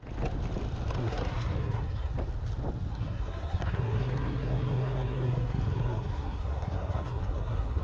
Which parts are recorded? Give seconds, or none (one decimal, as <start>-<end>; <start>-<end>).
0.0-1.0; 2.1-2.9